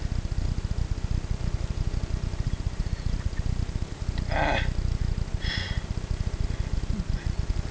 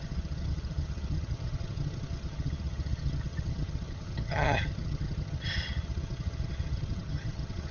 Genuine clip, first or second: first